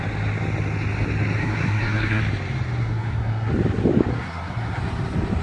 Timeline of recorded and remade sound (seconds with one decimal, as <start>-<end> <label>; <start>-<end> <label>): 0.0-1.4 recorded; 1.4-2.2 remade; 2.2-2.8 recorded; 2.8-3.5 remade; 3.5-4.1 recorded; 4.1-4.8 remade; 4.8-5.4 recorded